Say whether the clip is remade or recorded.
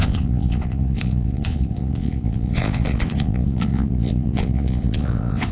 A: remade